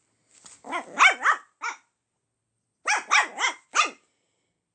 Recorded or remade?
recorded